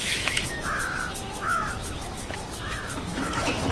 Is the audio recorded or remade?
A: remade